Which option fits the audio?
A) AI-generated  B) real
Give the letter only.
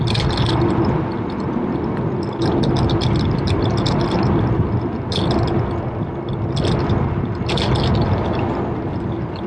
B